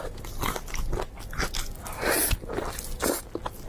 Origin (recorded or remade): recorded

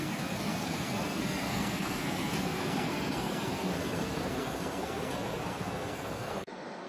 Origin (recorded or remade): remade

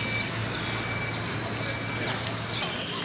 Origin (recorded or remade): recorded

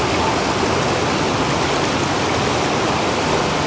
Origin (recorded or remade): recorded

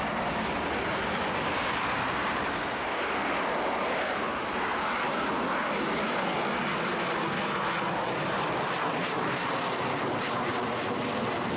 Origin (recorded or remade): recorded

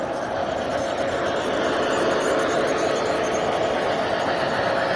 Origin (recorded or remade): recorded